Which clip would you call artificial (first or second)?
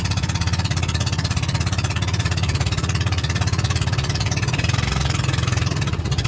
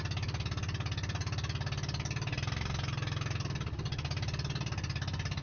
first